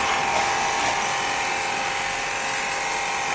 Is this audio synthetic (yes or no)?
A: no